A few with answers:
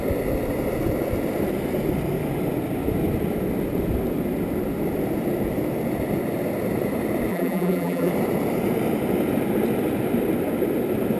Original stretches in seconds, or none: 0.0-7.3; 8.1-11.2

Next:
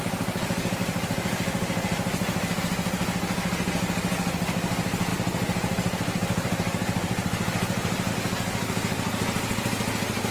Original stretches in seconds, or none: 0.0-0.8; 2.6-5.1; 8.1-10.3

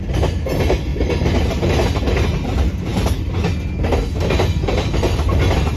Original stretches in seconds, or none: 0.0-0.9; 1.7-5.8

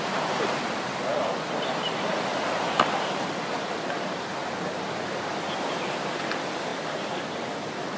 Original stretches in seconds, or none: 0.0-8.0

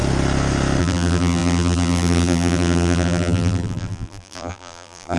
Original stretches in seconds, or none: 0.0-0.8

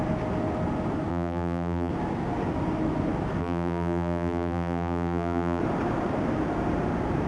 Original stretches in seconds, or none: 0.0-1.1; 1.9-3.4; 5.6-7.3

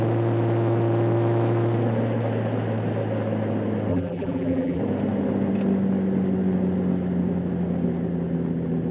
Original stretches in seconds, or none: 0.0-3.9; 4.8-8.9

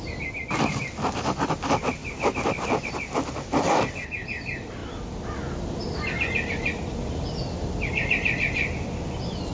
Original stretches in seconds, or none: 0.0-2.0; 2.9-9.5